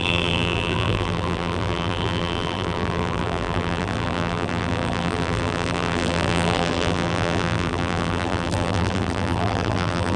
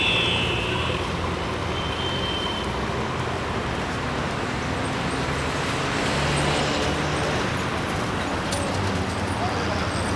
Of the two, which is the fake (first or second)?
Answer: first